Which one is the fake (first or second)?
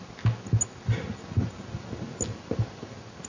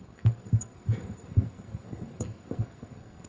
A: second